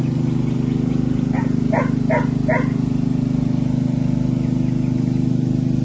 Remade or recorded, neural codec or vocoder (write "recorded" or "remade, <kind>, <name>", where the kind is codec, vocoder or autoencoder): recorded